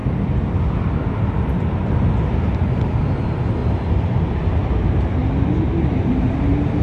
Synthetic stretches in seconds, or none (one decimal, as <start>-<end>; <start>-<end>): 3.0-3.6; 4.5-5.2; 5.9-6.8